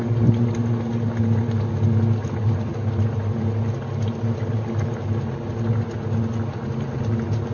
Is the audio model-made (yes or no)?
no